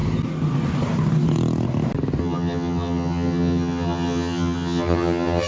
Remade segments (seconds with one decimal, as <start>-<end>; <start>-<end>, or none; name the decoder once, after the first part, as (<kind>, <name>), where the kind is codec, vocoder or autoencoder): 2.2-5.5 (vocoder, HiFi-GAN)